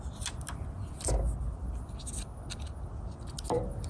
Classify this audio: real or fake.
real